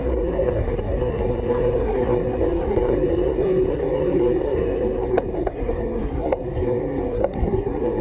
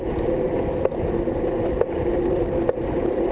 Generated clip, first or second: first